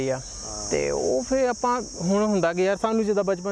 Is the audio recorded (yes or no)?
yes